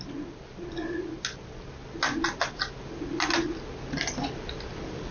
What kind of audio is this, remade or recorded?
recorded